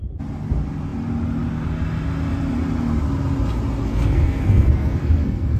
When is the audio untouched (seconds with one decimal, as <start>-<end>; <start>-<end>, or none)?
0.0-3.8